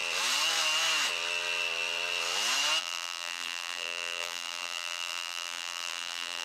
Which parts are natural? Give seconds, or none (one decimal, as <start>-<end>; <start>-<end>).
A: 0.0-2.8